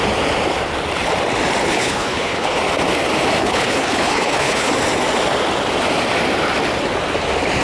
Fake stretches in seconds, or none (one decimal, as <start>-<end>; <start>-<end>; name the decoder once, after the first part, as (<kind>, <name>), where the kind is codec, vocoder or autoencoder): 1.6-2.6 (codec, HILCodec); 3.4-4.7